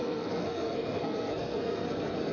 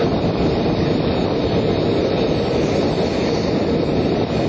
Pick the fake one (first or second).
first